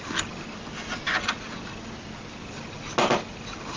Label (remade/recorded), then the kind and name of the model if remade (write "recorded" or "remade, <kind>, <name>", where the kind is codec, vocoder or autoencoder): recorded